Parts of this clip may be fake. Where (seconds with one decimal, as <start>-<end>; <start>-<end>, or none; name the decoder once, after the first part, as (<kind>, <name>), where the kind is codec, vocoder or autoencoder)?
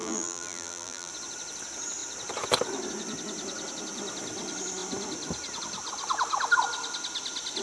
0.0-1.1 (vocoder, BigVGAN v2)